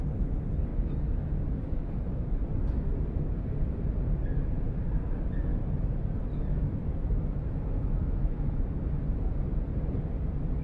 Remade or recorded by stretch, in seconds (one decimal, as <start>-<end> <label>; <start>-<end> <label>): 0.0-0.7 recorded; 0.7-3.7 remade; 3.7-6.3 recorded; 6.3-9.3 remade; 9.3-10.6 recorded